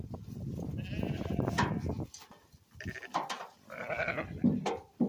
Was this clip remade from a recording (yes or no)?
no